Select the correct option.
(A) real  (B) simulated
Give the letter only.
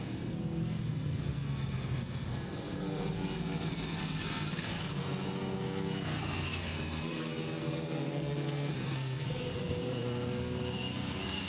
B